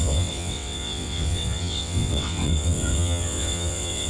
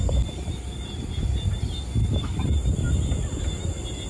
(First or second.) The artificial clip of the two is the first